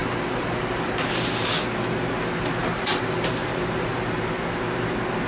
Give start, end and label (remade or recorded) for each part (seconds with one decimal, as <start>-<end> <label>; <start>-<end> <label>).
0.0-0.6 remade; 0.6-2.6 recorded; 2.6-4.2 remade; 4.2-5.3 recorded